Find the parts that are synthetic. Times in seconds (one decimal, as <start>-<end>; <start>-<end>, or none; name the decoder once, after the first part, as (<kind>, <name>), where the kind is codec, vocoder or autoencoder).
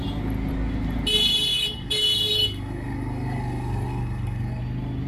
1.5-4.6 (codec, DAC)